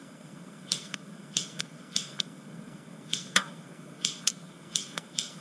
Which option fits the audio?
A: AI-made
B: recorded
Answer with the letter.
A